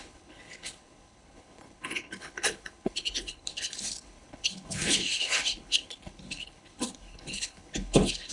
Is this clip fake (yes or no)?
yes